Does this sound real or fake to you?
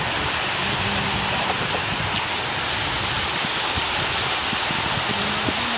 real